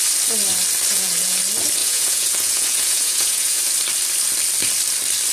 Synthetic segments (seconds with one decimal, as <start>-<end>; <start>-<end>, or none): 0.9-1.4; 1.8-3.6

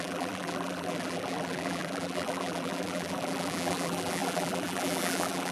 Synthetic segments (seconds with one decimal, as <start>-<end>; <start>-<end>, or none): 0.0-5.5

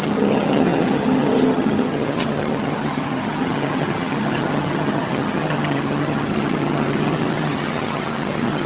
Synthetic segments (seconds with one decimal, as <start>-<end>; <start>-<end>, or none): 0.0-8.7